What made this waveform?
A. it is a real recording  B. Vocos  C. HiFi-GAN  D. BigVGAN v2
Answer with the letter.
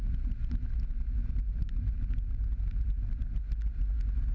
A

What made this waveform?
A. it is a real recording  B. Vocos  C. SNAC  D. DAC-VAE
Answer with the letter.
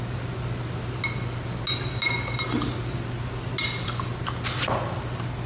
A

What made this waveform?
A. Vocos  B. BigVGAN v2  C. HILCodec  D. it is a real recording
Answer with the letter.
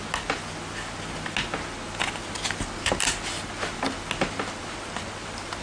D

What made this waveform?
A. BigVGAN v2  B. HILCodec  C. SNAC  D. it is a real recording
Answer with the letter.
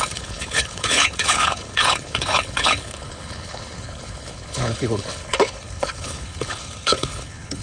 B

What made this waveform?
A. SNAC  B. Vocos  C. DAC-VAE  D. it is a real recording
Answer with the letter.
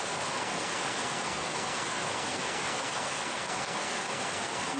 A